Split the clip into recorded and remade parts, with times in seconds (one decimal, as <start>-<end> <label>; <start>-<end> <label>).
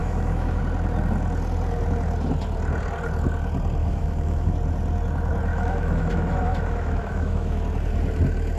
0.0-0.6 remade; 0.6-3.8 recorded; 3.8-4.5 remade; 4.5-5.5 recorded; 5.5-7.6 remade; 7.6-8.6 recorded